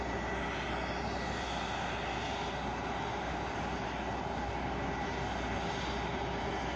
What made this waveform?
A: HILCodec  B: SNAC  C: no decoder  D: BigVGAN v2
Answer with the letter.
C